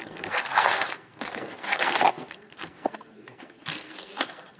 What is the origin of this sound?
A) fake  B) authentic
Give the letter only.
A